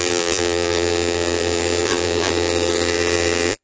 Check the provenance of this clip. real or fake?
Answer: fake